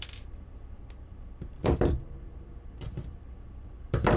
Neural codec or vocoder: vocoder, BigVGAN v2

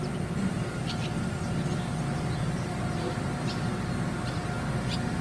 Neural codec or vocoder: none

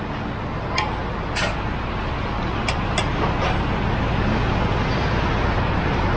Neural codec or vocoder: none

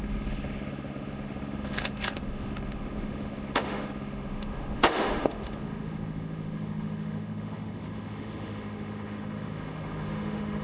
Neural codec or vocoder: autoencoder, DAC-VAE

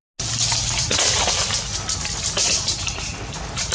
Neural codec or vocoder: none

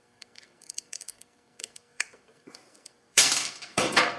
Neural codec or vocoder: codec, SNAC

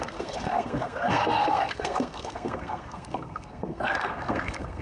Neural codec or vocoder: codec, SNAC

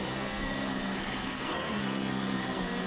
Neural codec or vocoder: codec, SNAC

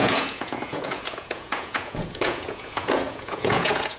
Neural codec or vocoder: vocoder, Vocos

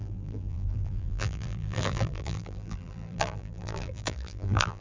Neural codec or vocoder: vocoder, BigVGAN v2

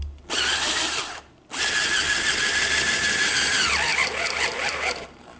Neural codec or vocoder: none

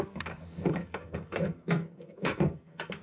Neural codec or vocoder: codec, SNAC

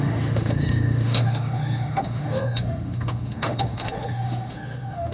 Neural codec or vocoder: autoencoder, DAC-VAE